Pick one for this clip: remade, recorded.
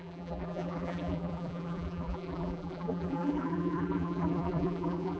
remade